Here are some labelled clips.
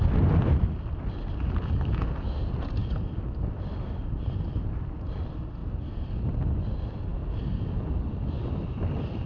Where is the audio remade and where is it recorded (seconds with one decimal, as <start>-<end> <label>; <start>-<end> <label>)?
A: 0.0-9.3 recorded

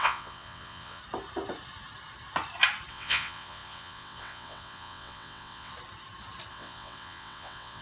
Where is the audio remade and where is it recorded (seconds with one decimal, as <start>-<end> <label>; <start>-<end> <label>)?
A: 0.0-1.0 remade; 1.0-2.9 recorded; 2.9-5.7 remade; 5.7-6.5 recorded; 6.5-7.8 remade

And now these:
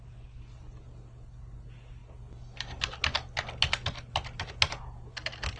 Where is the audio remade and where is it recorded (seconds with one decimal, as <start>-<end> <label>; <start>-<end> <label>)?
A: 0.0-5.6 recorded

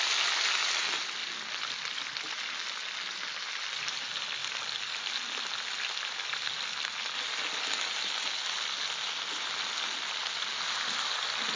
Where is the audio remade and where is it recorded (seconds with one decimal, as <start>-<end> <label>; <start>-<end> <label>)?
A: 0.0-11.6 recorded

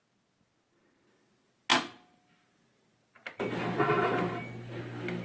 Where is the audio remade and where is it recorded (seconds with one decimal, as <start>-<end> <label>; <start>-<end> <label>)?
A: 0.0-5.2 recorded

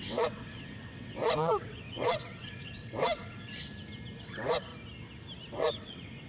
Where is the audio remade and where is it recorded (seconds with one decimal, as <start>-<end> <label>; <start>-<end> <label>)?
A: 0.0-3.5 remade; 3.5-4.2 recorded; 4.2-4.7 remade; 4.7-5.5 recorded; 5.5-6.3 remade